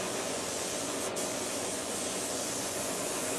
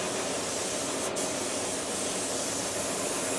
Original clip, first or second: second